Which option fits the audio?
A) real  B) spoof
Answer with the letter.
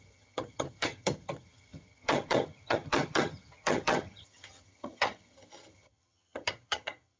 B